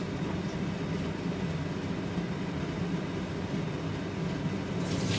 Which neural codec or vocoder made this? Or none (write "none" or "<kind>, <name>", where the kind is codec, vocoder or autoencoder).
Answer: none